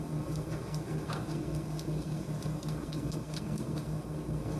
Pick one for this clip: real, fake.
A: fake